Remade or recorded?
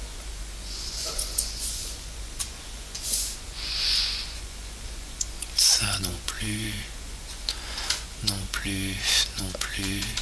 remade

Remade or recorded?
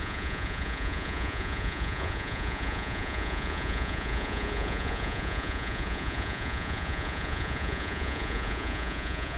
remade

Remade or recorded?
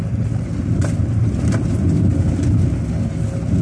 recorded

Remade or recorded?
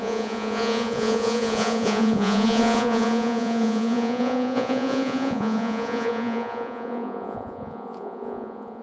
remade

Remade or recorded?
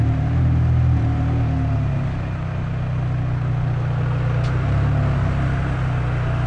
recorded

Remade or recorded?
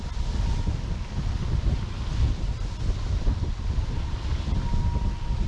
recorded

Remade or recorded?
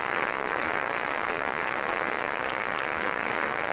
remade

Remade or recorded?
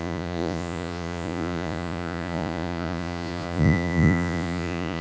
remade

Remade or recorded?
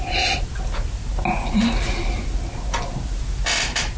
recorded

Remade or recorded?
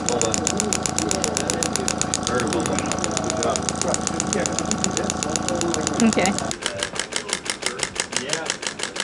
recorded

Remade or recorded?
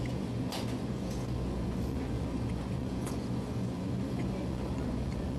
remade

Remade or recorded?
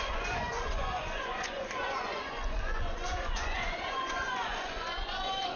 remade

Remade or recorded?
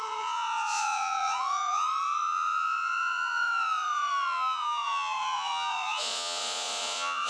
remade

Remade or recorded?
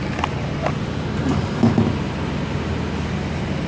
recorded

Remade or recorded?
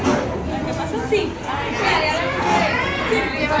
recorded